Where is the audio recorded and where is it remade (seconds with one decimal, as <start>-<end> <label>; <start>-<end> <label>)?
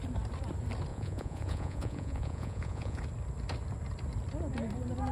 0.0-0.9 recorded; 0.9-3.0 remade; 3.0-5.1 recorded